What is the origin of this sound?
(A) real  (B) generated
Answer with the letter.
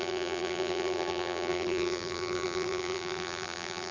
B